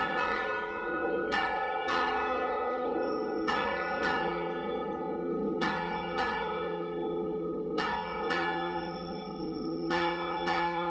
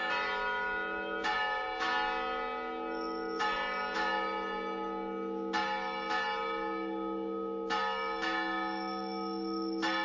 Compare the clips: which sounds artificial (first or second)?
first